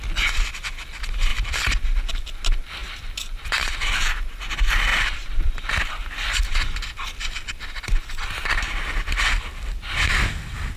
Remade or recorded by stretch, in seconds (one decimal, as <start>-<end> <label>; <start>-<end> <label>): 0.0-1.3 recorded; 1.3-2.1 remade; 2.1-2.8 recorded; 2.8-4.1 remade; 4.1-4.9 recorded; 4.9-5.9 remade; 5.9-10.8 recorded